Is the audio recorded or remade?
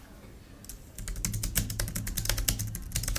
recorded